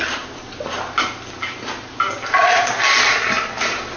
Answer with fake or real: real